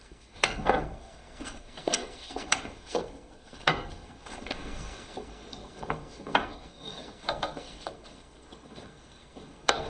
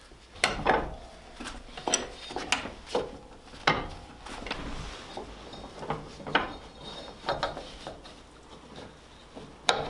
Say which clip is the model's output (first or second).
first